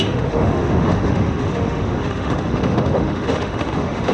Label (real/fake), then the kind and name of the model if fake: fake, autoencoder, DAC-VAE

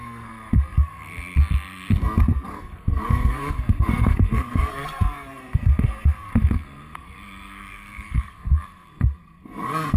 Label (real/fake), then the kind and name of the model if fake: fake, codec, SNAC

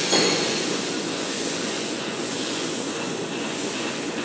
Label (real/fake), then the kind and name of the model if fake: fake, vocoder, Vocos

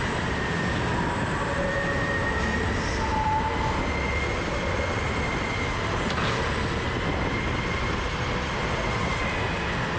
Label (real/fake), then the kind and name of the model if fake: real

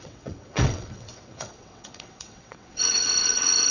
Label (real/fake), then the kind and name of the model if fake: fake, vocoder, WaveNeXt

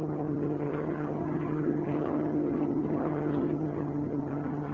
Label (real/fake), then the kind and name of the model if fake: fake, vocoder, HiFi-GAN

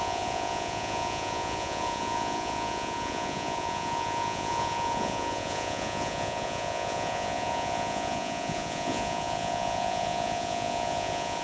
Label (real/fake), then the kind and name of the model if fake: fake, vocoder, Vocos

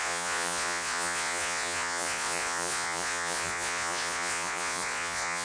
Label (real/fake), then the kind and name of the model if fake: fake, vocoder, Vocos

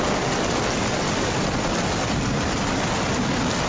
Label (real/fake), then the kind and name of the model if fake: real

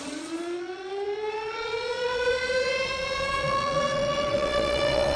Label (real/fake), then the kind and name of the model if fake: fake, vocoder, Vocos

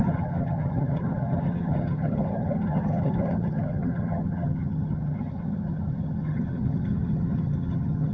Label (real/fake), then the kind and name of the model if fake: fake, vocoder, HiFi-GAN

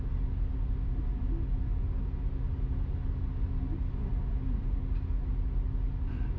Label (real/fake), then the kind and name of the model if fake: real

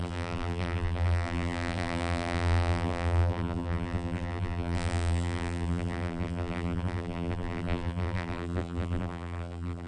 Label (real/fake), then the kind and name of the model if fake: fake, vocoder, BigVGAN v2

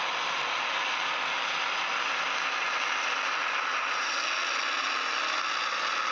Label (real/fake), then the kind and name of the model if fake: real